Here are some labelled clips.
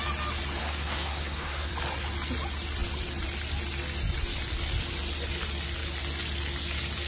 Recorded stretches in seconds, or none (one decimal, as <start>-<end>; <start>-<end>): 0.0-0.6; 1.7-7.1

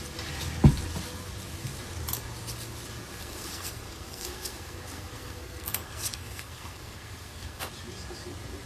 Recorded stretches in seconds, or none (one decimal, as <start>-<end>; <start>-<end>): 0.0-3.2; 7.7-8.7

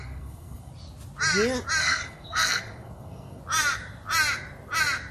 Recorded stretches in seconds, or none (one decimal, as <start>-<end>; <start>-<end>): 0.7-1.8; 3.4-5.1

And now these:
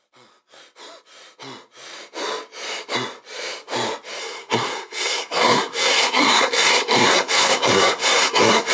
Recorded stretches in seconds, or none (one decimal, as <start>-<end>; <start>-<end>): 0.0-4.2

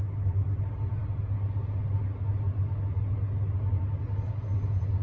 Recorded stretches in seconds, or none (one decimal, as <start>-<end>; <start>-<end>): 0.0-5.0

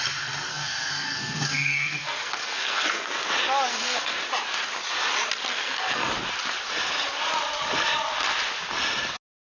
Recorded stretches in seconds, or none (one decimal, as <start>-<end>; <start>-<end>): 0.0-0.5; 3.3-3.7; 4.2-5.5; 6.1-9.4

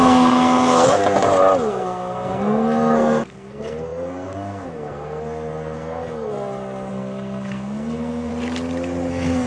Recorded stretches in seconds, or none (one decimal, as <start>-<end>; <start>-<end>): 1.0-1.7; 8.3-9.1